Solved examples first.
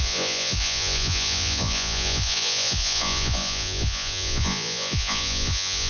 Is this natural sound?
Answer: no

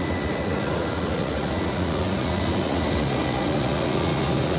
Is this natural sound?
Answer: no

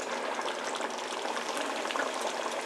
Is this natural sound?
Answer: yes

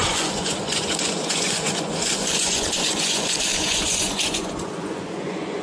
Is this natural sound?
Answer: no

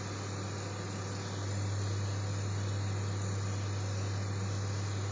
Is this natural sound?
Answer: yes